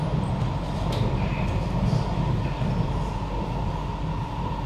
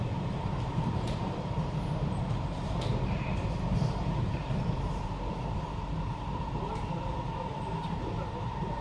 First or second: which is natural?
first